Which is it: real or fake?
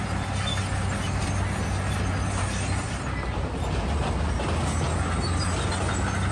real